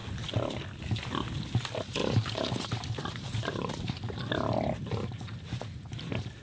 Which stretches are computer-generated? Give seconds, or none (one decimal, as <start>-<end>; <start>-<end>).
2.0-3.9